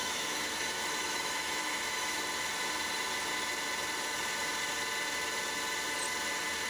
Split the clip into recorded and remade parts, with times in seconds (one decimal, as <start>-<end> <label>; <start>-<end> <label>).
0.0-2.2 remade; 2.2-6.7 recorded